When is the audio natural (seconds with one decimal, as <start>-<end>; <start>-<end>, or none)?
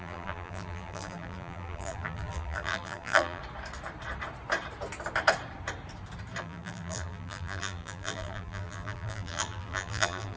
3.4-6.4